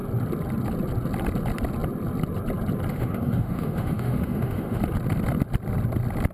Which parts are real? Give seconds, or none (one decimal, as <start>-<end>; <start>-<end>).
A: 0.0-2.9; 4.8-6.3